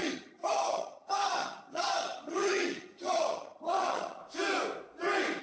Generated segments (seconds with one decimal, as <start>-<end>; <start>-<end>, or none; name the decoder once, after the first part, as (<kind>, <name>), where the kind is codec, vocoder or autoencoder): 0.0-4.2 (vocoder, HiFi-GAN)